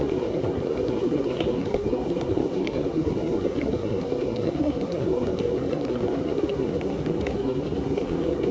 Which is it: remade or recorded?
remade